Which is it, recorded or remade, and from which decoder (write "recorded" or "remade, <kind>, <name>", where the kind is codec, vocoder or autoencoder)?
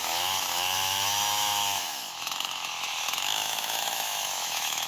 remade, autoencoder, DAC-VAE